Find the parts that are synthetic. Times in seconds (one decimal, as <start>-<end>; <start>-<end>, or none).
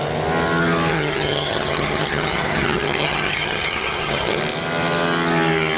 0.9-4.4